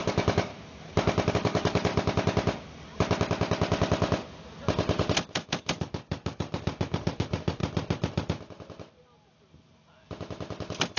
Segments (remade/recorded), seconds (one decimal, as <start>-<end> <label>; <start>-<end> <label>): 0.0-0.5 remade; 0.5-1.3 recorded; 1.3-1.9 remade; 1.9-5.6 recorded; 5.6-7.6 remade; 7.6-11.0 recorded